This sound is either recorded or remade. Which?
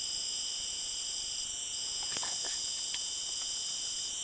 remade